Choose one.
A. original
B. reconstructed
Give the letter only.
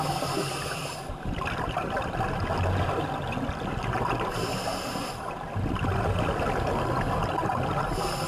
A